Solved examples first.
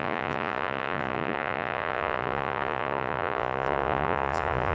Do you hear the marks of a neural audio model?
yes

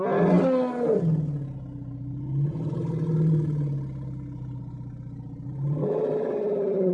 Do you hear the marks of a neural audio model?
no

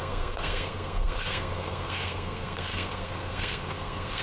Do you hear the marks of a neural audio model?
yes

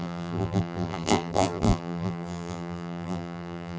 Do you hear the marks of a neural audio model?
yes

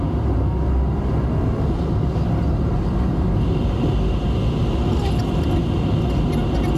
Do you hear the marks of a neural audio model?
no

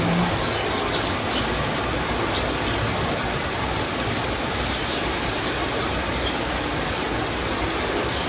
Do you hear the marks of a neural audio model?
no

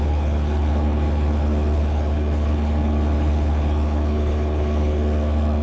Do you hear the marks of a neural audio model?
yes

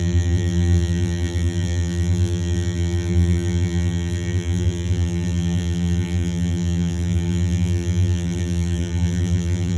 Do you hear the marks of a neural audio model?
yes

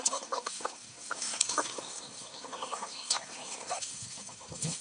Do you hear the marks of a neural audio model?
yes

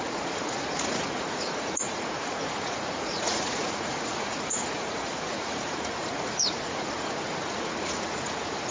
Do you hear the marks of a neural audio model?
yes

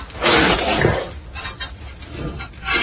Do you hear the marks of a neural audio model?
no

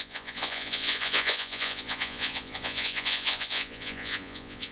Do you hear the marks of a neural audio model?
yes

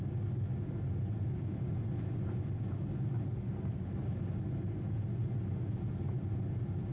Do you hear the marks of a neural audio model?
no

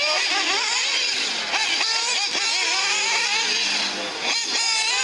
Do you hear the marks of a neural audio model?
no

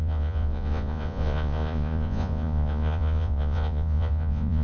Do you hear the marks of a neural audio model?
yes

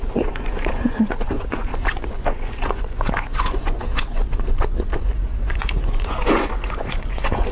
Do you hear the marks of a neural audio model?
yes